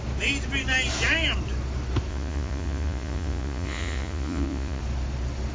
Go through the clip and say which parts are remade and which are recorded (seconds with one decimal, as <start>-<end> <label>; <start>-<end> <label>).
0.0-2.1 recorded; 2.1-4.8 remade; 4.8-5.5 recorded